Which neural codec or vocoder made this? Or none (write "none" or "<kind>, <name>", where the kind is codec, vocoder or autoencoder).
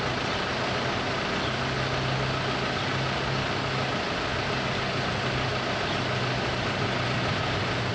none